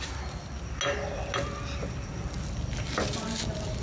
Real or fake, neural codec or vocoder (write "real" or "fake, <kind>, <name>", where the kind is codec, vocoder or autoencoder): real